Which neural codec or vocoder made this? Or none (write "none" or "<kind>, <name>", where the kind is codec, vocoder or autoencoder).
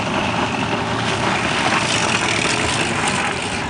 none